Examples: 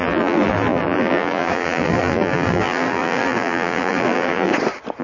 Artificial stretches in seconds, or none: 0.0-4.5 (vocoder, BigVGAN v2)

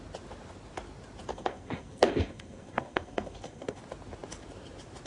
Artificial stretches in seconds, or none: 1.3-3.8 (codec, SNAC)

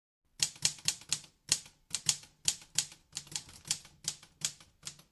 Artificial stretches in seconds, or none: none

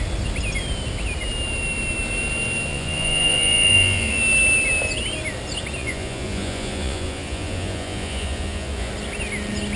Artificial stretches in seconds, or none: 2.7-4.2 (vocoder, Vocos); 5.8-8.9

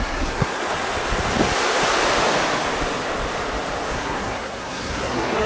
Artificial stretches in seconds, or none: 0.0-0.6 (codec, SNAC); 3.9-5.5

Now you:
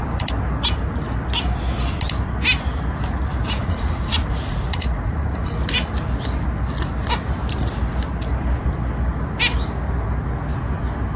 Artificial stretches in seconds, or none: 3.6-5.5 (vocoder, Vocos)

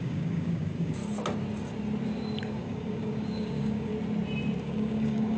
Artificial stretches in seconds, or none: 0.0-1.0 (codec, DAC); 2.4-3.9; 4.6-5.4

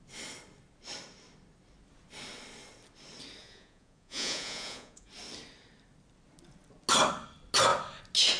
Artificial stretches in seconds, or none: 3.4-5.1 (vocoder, Vocos)